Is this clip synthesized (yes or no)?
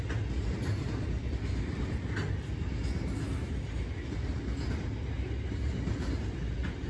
no